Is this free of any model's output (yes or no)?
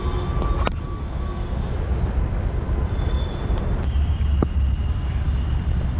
yes